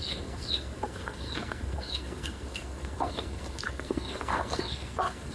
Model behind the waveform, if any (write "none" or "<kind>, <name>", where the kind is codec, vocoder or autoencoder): codec, SNAC